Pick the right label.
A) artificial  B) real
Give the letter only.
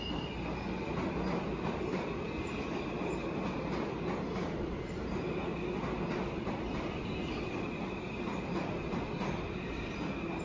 B